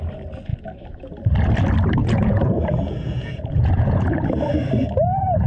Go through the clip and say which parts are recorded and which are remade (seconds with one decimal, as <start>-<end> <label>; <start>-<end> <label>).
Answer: 0.0-2.0 recorded; 2.0-4.1 remade; 4.1-5.5 recorded